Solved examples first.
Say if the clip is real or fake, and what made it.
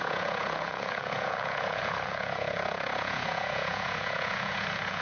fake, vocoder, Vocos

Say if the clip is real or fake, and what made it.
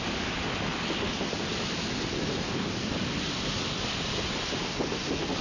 real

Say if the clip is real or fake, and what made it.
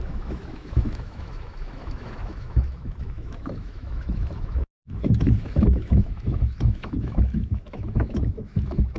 fake, autoencoder, DAC-VAE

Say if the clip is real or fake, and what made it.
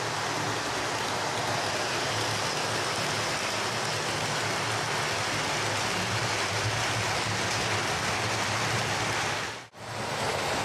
real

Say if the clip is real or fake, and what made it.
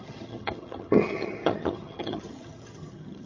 fake, vocoder, HiFi-GAN